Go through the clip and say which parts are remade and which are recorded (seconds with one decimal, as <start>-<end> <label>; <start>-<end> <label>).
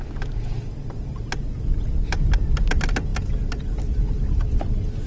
0.0-3.1 recorded; 3.1-3.9 remade; 3.9-5.1 recorded